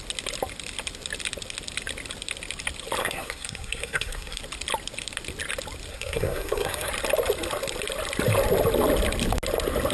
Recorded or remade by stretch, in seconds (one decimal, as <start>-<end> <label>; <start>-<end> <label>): 0.0-3.0 recorded; 3.0-4.4 remade; 4.4-5.9 recorded; 5.9-6.9 remade; 6.9-9.9 recorded